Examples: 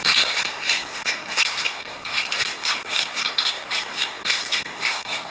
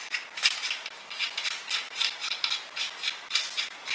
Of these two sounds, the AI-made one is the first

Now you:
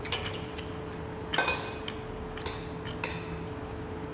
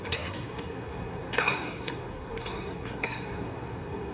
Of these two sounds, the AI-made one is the second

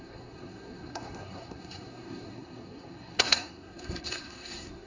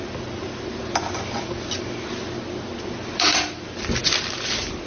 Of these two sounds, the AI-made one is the first